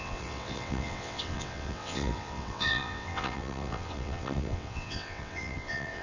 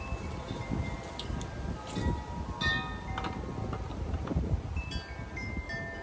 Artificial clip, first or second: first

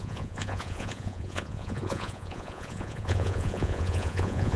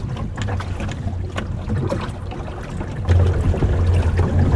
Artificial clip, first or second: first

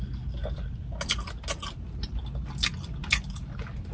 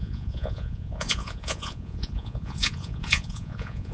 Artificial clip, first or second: second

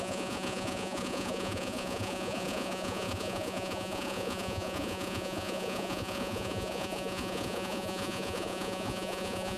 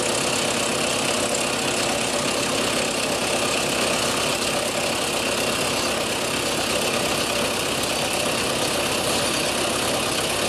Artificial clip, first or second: first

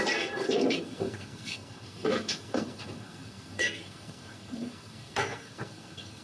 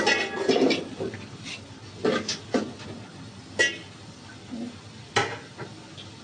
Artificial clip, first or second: first